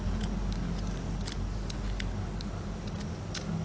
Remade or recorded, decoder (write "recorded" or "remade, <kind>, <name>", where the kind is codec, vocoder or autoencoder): recorded